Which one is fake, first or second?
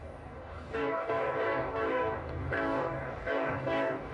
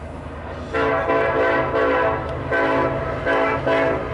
first